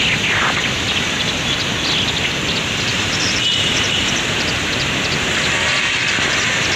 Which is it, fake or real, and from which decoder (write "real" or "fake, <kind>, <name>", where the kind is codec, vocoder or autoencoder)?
real